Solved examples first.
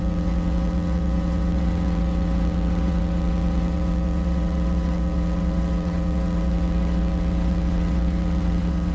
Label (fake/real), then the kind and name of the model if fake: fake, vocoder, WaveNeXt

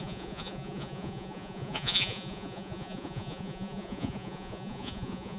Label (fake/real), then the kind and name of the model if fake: fake, vocoder, Vocos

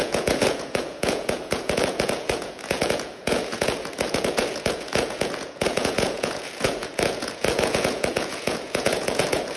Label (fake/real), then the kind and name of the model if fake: fake, vocoder, Vocos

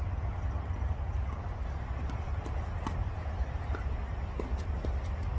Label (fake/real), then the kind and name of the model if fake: real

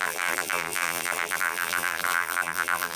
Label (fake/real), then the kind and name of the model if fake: fake, vocoder, BigVGAN v2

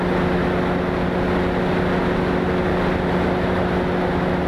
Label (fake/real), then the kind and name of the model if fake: real